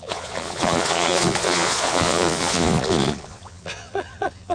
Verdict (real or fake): fake